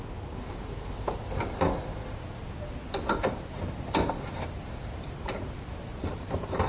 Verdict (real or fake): real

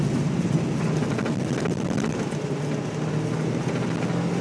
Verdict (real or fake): real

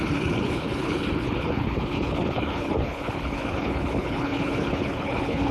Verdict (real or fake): fake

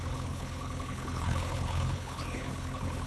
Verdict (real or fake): fake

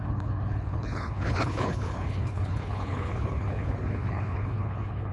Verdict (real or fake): fake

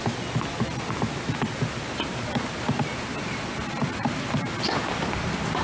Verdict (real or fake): real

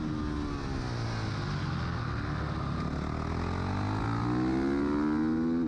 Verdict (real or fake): real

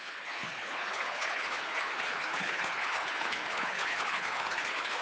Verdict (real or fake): fake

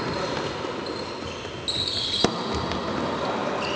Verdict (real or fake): real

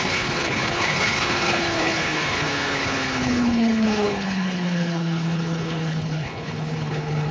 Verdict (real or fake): fake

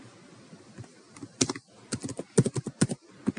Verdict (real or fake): real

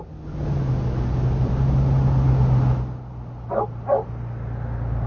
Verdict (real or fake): real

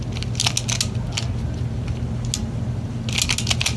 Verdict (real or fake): real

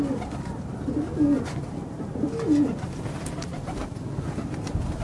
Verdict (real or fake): real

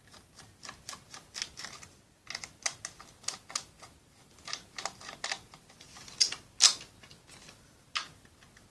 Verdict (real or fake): real